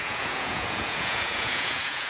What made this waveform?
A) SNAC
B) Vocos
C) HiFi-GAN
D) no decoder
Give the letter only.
B